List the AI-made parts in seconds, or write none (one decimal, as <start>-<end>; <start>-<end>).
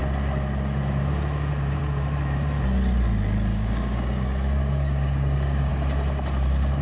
3.5-5.7